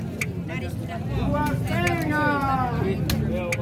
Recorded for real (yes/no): yes